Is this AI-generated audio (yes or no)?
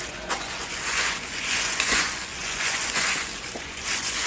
yes